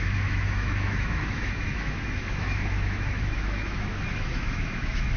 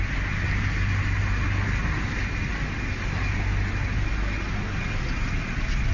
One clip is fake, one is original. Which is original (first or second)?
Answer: second